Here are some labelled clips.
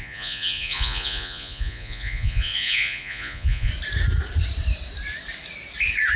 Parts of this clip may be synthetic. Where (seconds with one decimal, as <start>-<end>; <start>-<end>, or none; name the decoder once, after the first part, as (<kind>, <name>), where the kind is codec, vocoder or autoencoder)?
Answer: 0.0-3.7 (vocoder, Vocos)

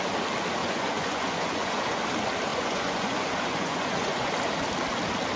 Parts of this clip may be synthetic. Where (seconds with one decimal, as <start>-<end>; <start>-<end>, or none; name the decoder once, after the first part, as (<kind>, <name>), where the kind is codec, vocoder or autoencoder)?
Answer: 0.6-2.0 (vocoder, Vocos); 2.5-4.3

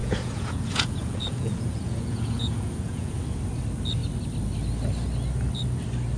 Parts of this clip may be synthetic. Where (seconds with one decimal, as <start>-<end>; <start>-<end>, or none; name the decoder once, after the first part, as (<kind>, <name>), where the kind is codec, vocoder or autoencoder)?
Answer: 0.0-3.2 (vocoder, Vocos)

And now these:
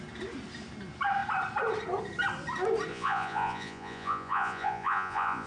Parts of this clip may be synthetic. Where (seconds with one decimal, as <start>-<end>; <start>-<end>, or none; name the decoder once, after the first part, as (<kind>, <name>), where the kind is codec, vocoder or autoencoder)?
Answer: 2.9-5.5 (vocoder, Vocos)